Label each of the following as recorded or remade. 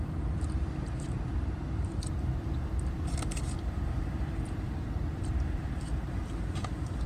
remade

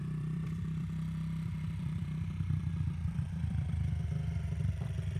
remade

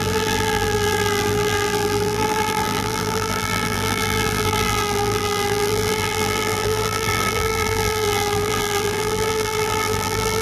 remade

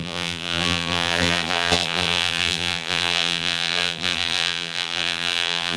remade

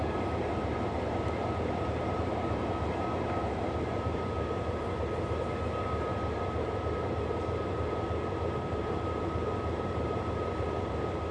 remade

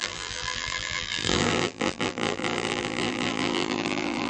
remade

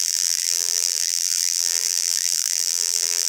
remade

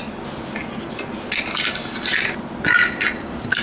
recorded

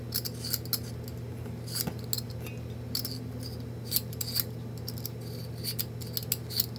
recorded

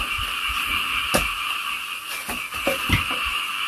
recorded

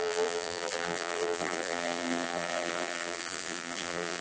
remade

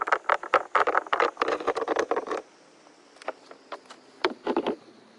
recorded